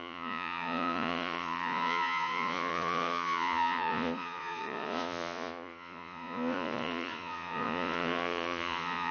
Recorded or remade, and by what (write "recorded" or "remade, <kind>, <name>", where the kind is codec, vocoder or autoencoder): remade, vocoder, Vocos